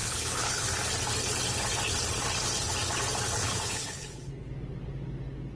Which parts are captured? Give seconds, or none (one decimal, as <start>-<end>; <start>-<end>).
0.6-3.4; 4.5-5.6